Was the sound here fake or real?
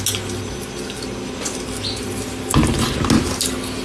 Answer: real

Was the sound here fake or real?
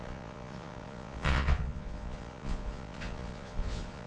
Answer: fake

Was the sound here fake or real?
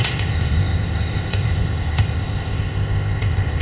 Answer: fake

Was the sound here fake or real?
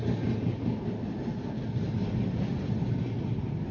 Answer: real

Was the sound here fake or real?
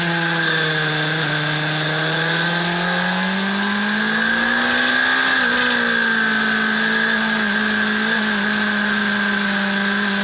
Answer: real